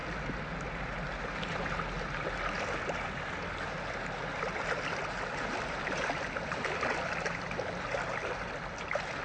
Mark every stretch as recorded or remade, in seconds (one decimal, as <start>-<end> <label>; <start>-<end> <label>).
0.0-9.2 recorded